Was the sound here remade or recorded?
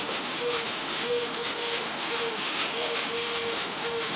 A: remade